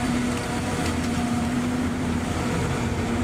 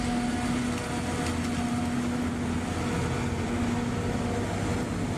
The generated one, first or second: first